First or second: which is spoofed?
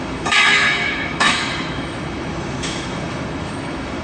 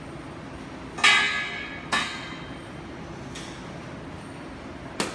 first